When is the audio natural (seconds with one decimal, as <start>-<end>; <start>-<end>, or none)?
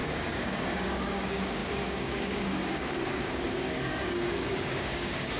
none